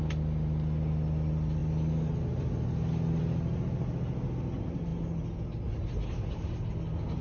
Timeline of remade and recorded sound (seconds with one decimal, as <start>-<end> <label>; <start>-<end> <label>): 0.0-7.2 recorded